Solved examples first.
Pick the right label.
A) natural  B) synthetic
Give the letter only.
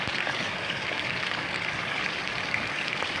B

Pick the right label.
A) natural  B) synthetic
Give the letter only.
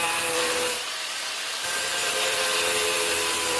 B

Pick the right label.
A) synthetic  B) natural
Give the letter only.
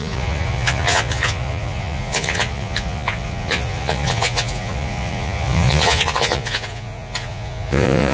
A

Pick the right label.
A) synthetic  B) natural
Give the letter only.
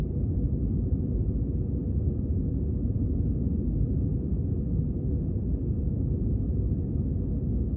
B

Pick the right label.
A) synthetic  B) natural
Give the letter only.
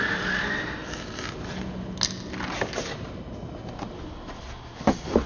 B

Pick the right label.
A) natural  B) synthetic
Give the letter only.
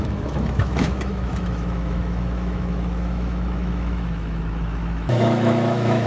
B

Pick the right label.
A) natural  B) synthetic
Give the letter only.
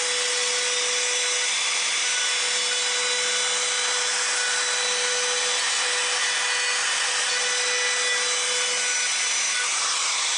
A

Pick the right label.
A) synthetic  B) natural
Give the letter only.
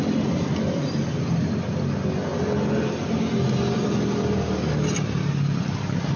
B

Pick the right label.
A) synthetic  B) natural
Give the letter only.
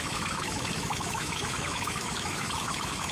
A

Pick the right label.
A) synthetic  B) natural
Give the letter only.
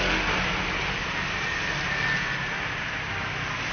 B